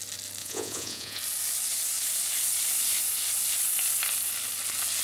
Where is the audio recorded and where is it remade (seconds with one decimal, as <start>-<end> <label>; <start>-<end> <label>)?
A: 0.0-0.4 recorded; 0.4-1.2 remade; 1.2-5.0 recorded